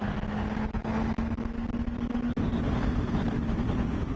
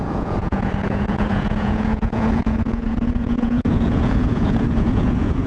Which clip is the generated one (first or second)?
second